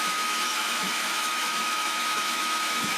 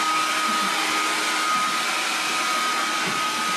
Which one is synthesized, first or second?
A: first